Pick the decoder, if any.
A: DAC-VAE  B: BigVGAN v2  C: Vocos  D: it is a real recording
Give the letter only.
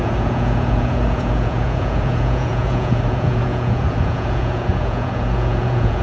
C